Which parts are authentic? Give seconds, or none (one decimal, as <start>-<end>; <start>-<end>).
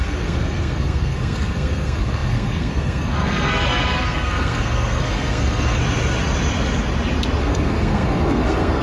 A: 5.8-7.4